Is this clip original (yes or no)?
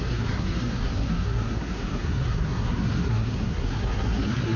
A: no